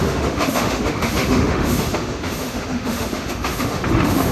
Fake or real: fake